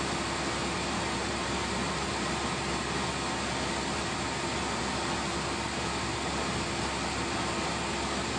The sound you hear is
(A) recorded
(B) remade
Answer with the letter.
A